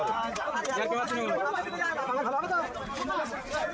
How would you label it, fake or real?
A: real